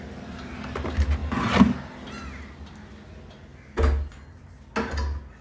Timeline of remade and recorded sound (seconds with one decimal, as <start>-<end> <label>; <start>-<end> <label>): 0.0-5.4 recorded